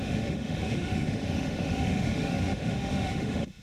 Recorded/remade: remade